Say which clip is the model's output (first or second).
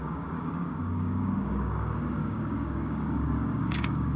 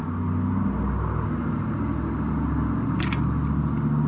first